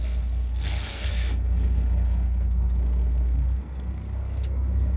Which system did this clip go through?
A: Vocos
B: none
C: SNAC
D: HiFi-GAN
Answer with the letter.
C